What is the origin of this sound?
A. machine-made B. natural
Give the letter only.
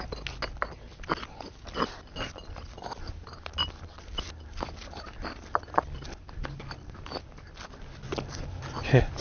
B